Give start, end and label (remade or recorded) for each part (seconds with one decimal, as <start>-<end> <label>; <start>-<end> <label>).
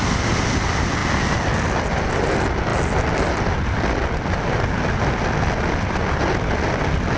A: 0.0-7.2 recorded